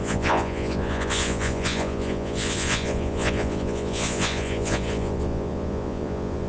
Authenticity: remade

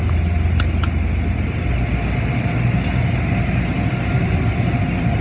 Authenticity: recorded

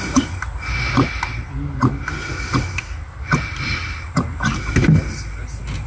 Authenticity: recorded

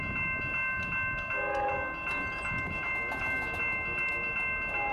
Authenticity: recorded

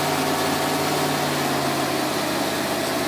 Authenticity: recorded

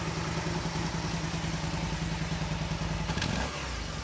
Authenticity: recorded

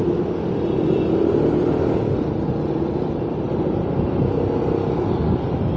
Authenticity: recorded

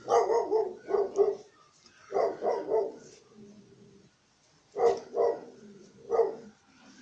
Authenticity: recorded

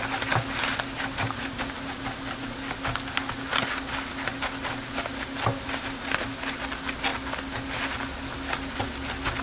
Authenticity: recorded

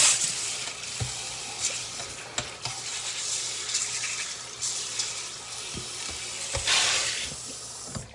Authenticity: recorded